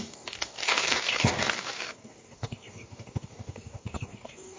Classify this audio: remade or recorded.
remade